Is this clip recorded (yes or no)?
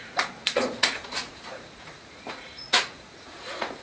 no